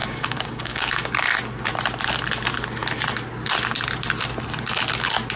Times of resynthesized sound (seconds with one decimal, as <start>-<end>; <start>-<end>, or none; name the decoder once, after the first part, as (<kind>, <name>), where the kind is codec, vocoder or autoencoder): 0.0-1.1 (codec, DAC)